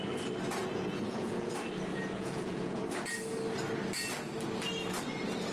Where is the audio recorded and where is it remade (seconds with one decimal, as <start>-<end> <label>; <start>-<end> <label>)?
0.0-0.6 recorded; 0.6-1.5 remade; 1.5-1.9 recorded; 1.9-2.8 remade; 2.8-5.5 recorded